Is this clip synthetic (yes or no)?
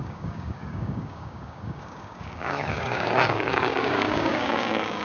yes